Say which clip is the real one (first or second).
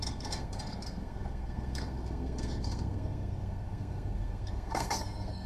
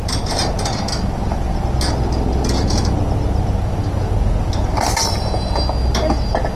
second